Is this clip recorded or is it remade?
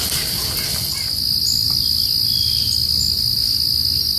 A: recorded